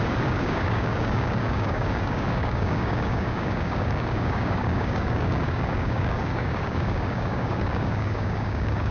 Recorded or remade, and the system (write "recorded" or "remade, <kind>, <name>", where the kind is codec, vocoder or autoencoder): remade, codec, DAC